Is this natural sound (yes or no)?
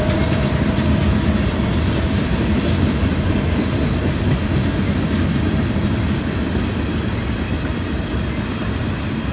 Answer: yes